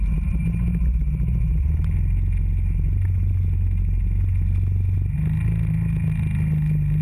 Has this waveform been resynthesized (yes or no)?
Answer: no